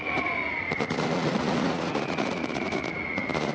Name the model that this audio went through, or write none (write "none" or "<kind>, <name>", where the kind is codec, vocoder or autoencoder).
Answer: vocoder, Vocos